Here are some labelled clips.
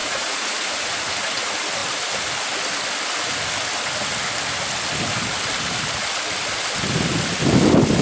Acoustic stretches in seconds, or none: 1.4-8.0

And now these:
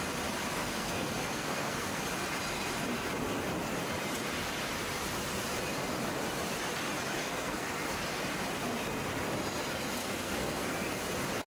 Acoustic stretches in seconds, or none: 0.0-0.6; 2.0-7.2; 8.0-10.0; 11.0-11.5

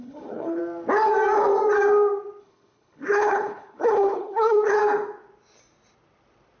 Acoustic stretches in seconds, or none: 0.6-2.4; 4.8-6.6